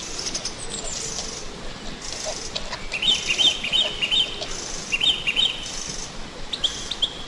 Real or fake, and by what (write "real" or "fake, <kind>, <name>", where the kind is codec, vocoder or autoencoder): real